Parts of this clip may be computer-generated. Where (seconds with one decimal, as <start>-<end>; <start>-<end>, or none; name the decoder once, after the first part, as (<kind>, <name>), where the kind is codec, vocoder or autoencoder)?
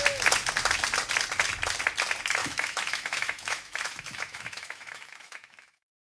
2.4-6.0 (autoencoder, DAC-VAE)